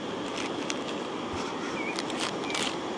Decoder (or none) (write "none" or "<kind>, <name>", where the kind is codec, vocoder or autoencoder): none